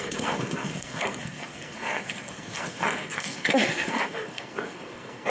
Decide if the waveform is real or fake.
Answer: fake